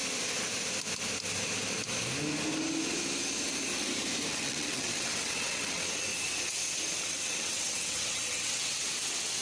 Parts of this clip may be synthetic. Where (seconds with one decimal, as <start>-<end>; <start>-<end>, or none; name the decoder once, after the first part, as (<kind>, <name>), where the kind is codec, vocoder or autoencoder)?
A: 4.3-6.1 (vocoder, WaveNeXt); 7.0-9.4

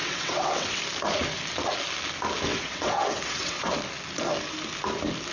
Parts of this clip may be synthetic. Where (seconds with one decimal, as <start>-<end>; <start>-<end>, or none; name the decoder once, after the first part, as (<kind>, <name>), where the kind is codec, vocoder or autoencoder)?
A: 0.0-0.8 (vocoder, WaveNeXt); 2.5-3.7

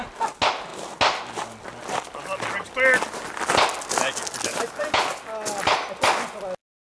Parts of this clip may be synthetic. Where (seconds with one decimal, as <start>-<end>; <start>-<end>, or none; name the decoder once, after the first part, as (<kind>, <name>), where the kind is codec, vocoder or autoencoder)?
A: none